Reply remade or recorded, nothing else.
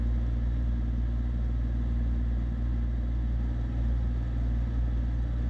recorded